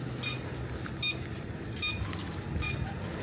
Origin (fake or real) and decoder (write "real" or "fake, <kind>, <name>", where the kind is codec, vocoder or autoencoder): real